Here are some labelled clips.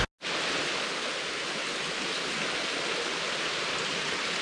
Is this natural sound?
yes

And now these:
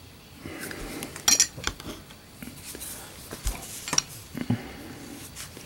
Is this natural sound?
yes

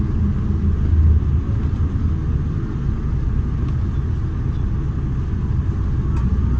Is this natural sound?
yes